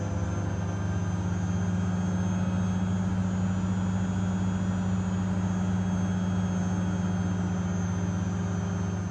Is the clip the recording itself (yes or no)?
yes